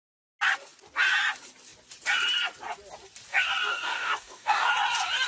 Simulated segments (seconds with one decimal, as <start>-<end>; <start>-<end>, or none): 3.3-4.7